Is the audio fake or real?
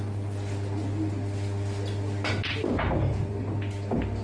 real